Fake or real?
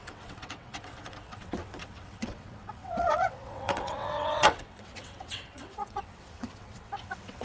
fake